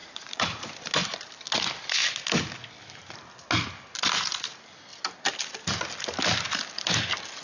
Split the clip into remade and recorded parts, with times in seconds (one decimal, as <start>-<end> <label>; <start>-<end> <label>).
0.0-0.7 remade; 0.7-7.4 recorded